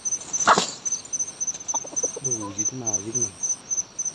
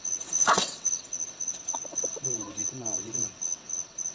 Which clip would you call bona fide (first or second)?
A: first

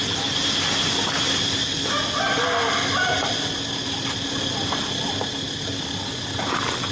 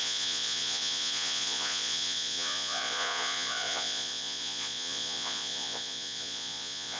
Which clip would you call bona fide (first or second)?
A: first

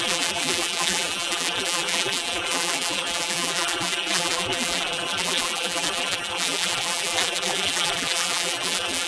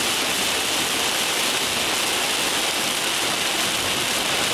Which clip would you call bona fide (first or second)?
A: second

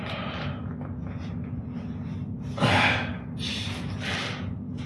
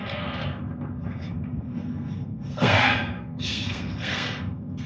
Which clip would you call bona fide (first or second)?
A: first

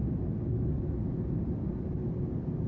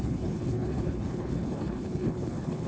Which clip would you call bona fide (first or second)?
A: first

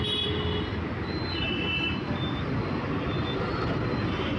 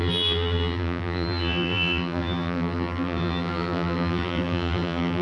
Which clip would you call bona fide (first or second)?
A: first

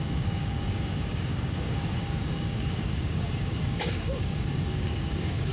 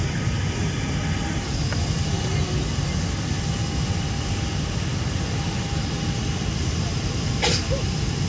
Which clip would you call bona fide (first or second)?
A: second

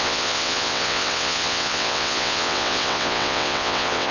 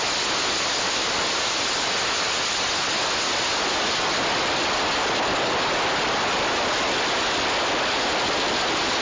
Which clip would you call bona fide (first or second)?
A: second